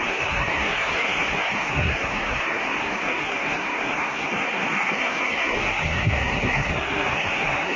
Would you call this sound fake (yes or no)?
yes